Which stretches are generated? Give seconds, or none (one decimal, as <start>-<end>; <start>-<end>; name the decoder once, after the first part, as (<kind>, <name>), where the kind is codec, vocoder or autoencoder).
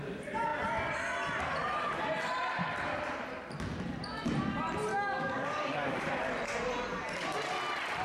4.9-6.1 (codec, DAC)